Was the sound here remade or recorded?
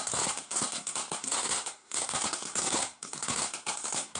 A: remade